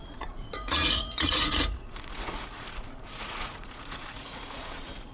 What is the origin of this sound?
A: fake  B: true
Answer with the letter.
A